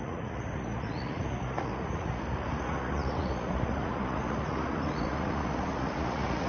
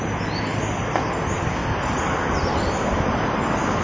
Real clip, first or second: second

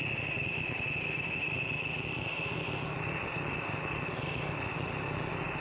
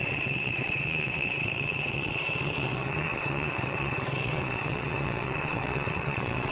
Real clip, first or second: first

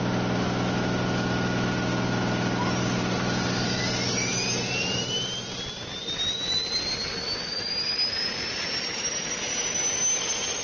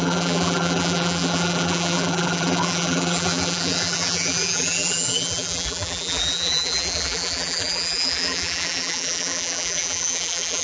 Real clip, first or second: first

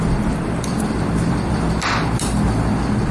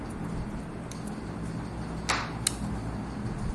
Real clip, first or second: second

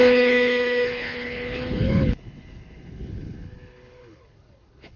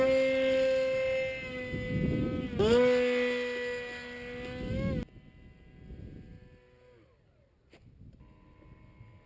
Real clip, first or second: second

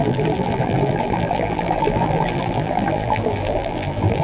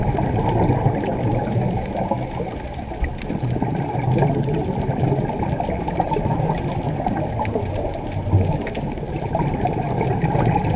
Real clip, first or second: second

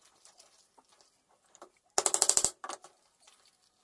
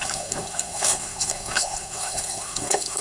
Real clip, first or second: first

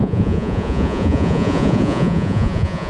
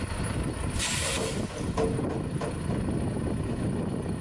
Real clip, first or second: second